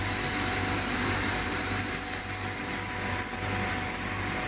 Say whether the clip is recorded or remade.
recorded